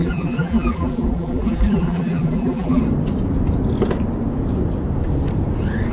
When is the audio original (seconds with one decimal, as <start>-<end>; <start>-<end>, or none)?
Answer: 2.8-5.9